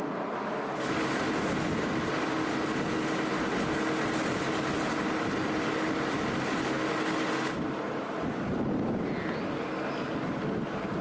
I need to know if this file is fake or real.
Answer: real